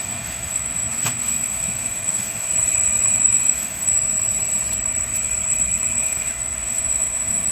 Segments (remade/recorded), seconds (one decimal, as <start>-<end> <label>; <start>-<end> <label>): 0.0-2.5 remade; 2.5-3.2 recorded; 3.2-3.9 remade; 3.9-6.0 recorded; 6.0-7.5 remade